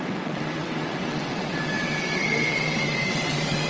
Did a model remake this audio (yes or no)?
yes